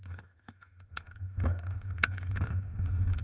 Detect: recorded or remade remade